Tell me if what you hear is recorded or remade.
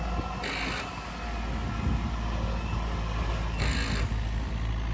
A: recorded